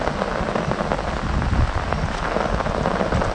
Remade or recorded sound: recorded